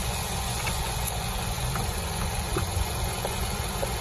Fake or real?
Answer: fake